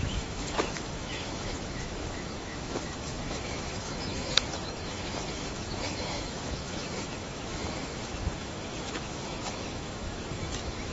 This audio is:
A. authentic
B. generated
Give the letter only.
B